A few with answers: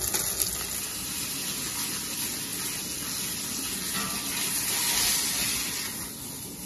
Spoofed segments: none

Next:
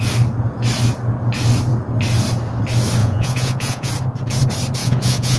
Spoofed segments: 3.0-3.9 (vocoder, Vocos); 4.8-5.4

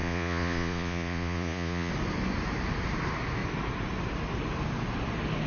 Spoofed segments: 0.0-1.9 (vocoder, Vocos)

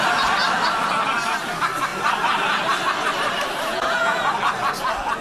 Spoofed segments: 3.7-4.3 (vocoder, Vocos)